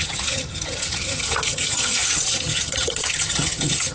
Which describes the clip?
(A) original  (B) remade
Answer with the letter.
B